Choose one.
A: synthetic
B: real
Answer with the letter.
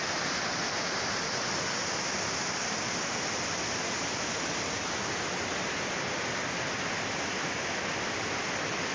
B